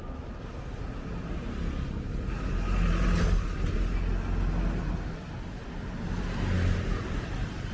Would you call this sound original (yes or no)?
yes